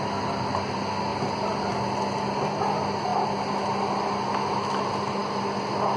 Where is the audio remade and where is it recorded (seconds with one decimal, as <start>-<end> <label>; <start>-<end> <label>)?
0.0-6.0 recorded